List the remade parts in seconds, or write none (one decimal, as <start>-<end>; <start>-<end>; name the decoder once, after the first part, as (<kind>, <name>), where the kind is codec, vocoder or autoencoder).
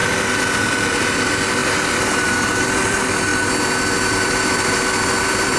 0.6-3.3 (vocoder, BigVGAN v2); 4.1-5.6